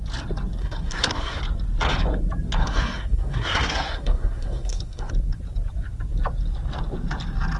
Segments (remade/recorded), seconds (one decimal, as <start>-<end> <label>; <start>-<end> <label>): 0.0-0.6 recorded; 0.6-1.4 remade; 1.4-2.6 recorded; 2.6-5.1 remade; 5.1-7.6 recorded